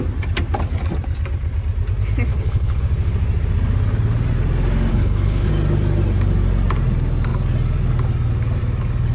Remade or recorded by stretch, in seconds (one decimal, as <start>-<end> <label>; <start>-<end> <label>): 0.0-2.3 recorded; 2.3-2.8 remade; 2.8-4.9 recorded; 4.9-5.5 remade; 5.5-9.1 recorded

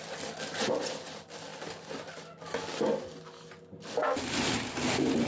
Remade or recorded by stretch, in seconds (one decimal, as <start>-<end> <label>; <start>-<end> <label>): 0.0-5.3 recorded

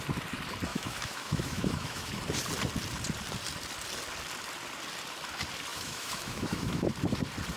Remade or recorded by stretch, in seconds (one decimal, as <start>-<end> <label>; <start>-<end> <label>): 0.0-0.7 recorded; 0.7-2.1 remade; 2.1-5.7 recorded; 5.7-6.9 remade; 6.9-7.6 recorded

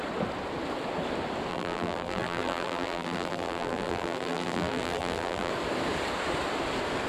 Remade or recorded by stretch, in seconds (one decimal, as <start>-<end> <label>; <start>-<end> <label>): 0.0-1.5 recorded; 1.5-5.5 remade; 5.5-7.1 recorded

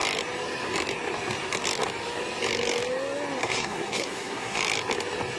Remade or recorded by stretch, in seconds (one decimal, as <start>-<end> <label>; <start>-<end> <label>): 0.0-3.4 recorded; 3.4-4.6 remade; 4.6-5.4 recorded

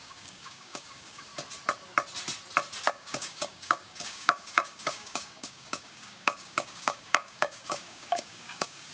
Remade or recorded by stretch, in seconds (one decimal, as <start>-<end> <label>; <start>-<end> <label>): 0.0-1.3 remade; 1.3-2.9 recorded; 2.9-8.9 remade